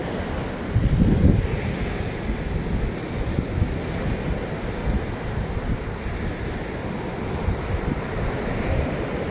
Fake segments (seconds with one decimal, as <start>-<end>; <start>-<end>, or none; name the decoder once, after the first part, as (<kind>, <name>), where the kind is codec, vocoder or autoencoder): 0.0-2.8 (vocoder, BigVGAN v2); 4.8-5.5